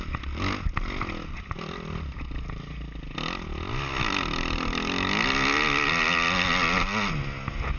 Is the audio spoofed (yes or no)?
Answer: no